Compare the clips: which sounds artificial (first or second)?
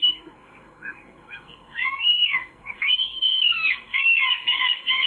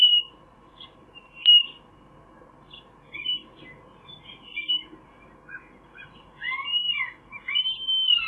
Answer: first